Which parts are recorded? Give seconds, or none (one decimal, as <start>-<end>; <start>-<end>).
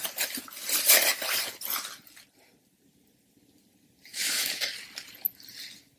0.0-4.1; 4.6-6.0